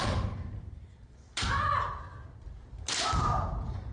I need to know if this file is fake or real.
fake